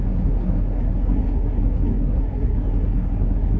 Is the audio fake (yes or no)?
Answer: yes